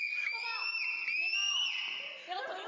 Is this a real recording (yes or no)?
yes